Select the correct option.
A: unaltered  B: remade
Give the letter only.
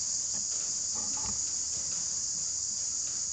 A